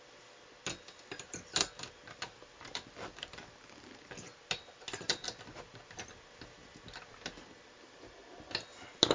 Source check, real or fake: real